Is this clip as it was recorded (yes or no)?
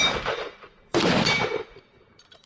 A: no